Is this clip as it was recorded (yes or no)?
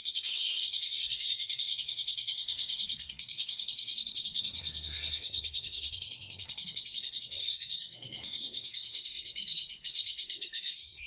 no